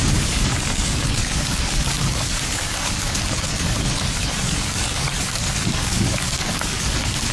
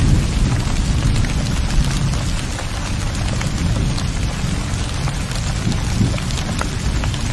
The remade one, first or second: first